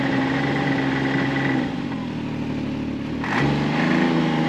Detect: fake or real real